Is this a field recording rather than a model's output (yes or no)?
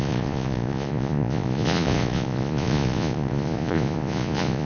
no